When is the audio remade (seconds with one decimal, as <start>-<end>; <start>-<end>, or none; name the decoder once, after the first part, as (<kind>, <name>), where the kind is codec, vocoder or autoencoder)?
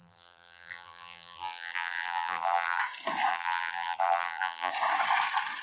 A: 0.0-2.8 (vocoder, BigVGAN v2); 3.3-4.7